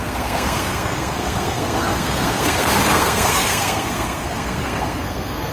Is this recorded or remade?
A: remade